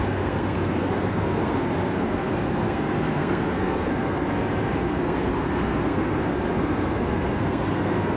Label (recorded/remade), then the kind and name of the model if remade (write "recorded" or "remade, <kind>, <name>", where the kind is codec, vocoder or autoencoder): remade, codec, SNAC